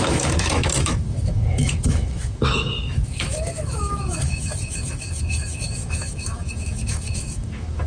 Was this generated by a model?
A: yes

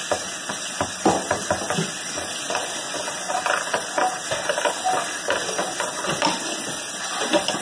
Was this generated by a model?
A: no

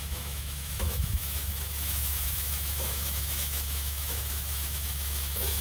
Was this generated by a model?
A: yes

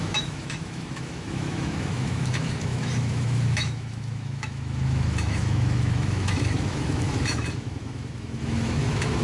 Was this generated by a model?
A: yes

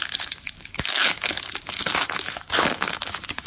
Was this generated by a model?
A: yes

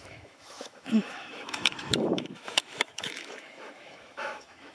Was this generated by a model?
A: yes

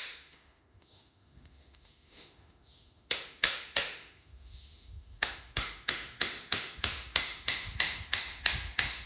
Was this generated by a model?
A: yes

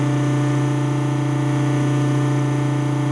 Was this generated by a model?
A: no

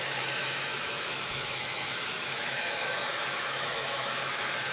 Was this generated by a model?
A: yes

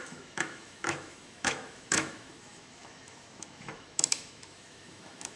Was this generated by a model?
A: yes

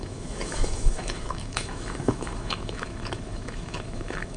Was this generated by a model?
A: yes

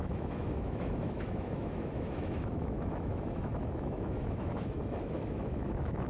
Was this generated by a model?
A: yes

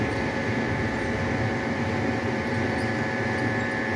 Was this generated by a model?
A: no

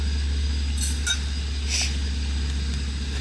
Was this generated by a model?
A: no